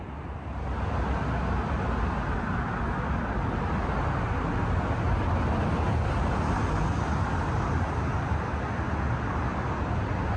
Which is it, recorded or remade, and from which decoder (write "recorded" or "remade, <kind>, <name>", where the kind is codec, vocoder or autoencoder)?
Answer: recorded